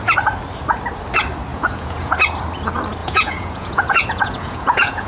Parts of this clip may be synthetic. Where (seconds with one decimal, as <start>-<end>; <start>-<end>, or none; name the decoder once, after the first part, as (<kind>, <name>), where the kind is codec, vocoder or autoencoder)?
1.5-2.1 (vocoder, Vocos); 3.0-5.1